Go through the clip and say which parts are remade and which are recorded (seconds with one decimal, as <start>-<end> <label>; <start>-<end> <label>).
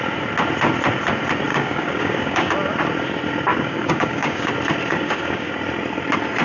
0.0-1.5 recorded; 1.5-2.5 remade; 2.5-3.5 recorded; 3.5-4.5 remade; 4.5-4.9 recorded; 4.9-5.5 remade; 5.5-6.4 recorded